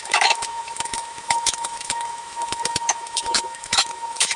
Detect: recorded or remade remade